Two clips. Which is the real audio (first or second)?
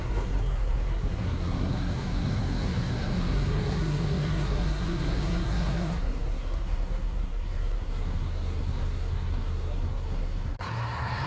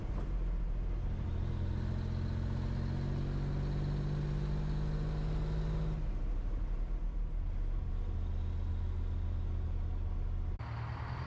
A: second